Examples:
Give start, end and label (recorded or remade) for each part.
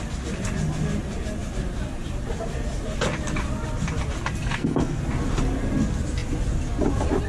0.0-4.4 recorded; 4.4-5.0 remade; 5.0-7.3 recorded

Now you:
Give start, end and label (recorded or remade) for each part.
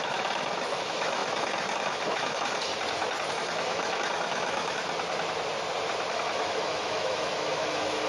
0.0-2.7 remade; 2.7-3.3 recorded; 3.3-4.8 remade; 4.8-6.1 recorded; 6.1-8.1 remade